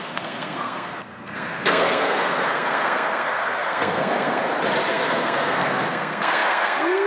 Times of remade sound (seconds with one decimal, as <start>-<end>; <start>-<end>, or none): 0.0-4.4; 4.9-7.1